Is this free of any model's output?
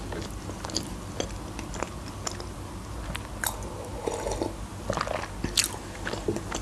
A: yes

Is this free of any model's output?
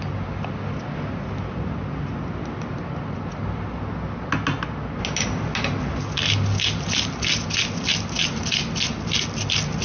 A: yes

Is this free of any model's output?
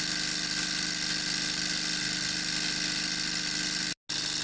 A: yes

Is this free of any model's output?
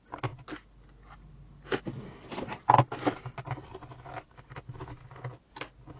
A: yes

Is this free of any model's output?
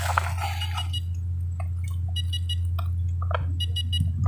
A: yes